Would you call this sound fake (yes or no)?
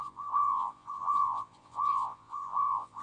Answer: yes